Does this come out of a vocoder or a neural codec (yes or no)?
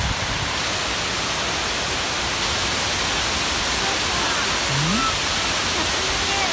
no